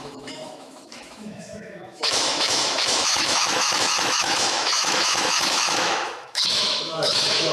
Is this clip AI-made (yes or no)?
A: yes